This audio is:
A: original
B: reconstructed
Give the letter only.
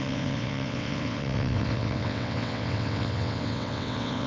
B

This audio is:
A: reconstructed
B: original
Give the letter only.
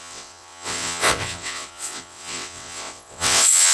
A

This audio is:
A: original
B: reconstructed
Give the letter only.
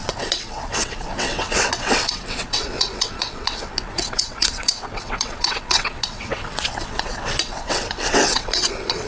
B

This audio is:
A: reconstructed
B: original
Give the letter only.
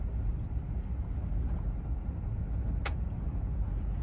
B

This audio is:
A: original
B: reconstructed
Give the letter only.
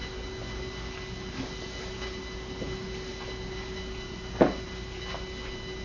A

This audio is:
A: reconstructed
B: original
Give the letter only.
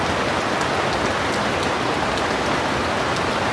B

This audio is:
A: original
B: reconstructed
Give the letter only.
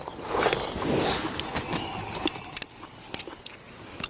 A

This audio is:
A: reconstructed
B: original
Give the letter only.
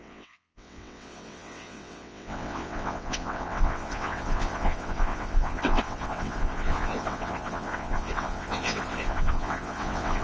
A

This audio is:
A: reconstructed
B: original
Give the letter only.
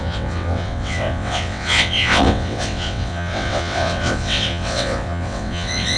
A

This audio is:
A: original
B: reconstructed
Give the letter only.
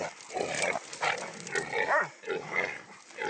A